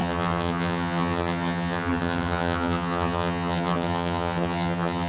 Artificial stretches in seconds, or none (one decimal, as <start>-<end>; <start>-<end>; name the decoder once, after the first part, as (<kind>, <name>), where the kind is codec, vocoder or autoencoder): 0.0-5.1 (vocoder, HiFi-GAN)